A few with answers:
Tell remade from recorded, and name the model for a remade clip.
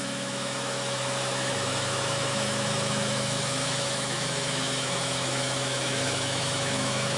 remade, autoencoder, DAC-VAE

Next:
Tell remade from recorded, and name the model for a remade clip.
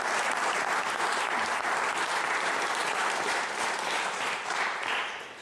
recorded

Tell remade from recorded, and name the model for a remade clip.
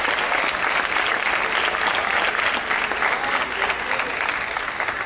recorded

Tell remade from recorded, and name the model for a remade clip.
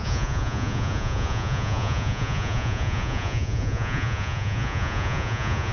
remade, vocoder, Vocos